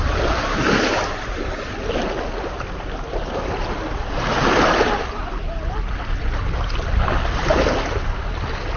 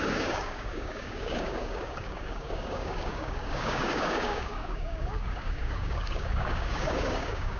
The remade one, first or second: second